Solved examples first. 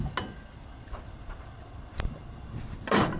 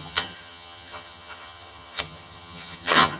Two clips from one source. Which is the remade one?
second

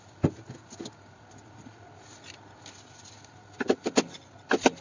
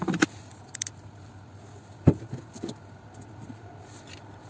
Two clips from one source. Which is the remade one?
second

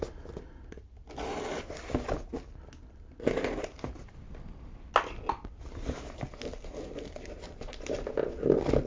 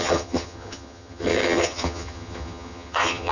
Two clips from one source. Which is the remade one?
second